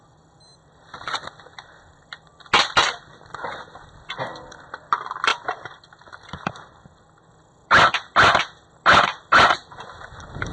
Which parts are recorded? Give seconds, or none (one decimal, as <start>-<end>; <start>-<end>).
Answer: 0.0-10.5